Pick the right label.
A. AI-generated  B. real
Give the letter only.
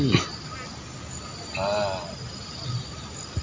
B